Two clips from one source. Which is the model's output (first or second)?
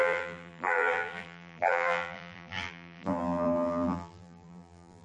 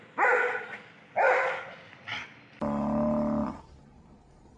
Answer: first